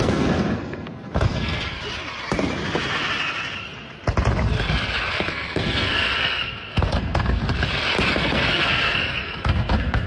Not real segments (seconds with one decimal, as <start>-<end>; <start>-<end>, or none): 0.0-1.8; 5.1-7.4; 8.1-10.1